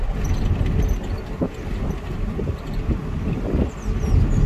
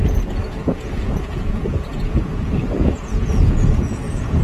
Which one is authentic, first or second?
first